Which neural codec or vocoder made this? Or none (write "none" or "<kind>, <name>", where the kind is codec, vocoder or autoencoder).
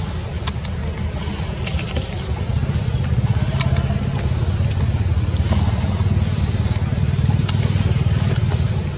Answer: none